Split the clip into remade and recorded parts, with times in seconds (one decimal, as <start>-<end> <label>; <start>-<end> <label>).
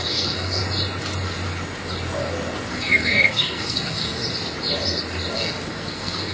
0.0-0.6 remade; 0.6-2.7 recorded; 2.7-4.2 remade; 4.2-5.3 recorded; 5.3-6.3 remade